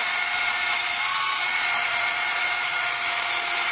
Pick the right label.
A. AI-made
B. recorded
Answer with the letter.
A